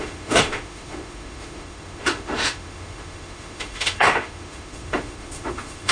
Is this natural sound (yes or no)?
no